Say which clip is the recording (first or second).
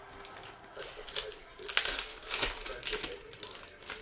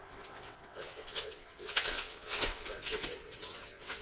first